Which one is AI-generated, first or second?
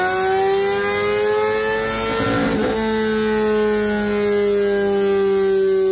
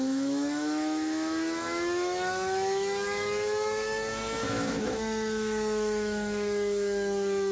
second